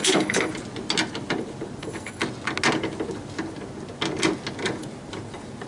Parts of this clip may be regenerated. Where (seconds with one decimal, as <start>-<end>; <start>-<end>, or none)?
0.0-0.5; 1.8-2.2